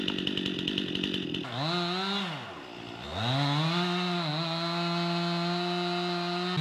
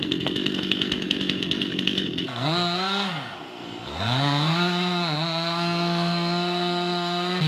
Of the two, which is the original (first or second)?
first